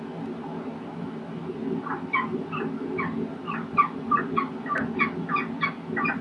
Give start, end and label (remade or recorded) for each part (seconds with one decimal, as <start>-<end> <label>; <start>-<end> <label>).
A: 0.0-6.2 recorded

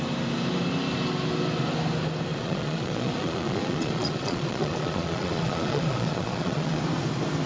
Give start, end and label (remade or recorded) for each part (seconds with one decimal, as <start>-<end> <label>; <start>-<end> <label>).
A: 0.0-2.3 recorded; 2.3-6.8 remade; 6.8-7.5 recorded